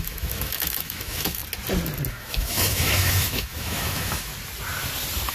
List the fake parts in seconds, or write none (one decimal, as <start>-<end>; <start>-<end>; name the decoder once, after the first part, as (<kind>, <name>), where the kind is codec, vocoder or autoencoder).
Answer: 0.0-1.4 (autoencoder, DAC-VAE); 2.1-4.3